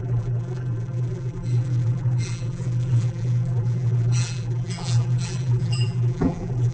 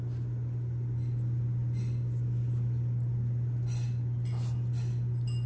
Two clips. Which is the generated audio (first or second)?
first